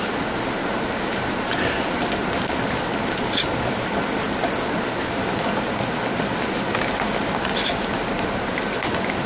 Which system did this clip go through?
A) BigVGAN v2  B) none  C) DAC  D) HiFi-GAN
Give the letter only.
B